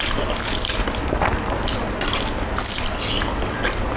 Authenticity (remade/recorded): recorded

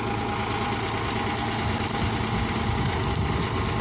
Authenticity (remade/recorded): recorded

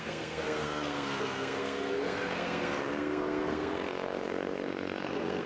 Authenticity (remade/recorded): remade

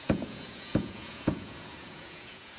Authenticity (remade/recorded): remade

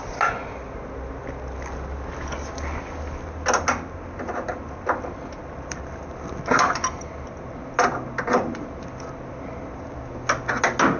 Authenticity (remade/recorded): recorded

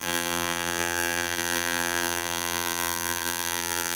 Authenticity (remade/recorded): remade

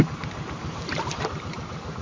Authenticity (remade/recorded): remade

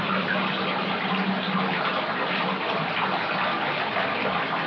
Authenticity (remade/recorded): recorded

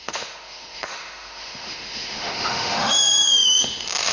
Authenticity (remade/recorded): remade